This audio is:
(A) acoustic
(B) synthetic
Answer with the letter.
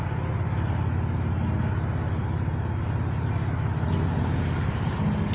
A